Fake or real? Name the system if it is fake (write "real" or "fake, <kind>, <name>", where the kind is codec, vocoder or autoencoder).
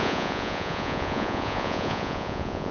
fake, vocoder, Vocos